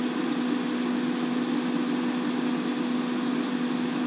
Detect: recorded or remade recorded